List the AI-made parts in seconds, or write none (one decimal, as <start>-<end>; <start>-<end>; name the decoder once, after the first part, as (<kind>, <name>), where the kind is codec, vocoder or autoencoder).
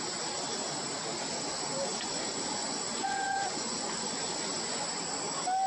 1.9-5.0 (vocoder, Vocos)